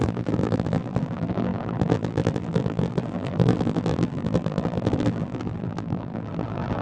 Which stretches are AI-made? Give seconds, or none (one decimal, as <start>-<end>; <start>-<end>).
0.0-6.8